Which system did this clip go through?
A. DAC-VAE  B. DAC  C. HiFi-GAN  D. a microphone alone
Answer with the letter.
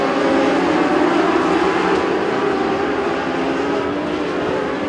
D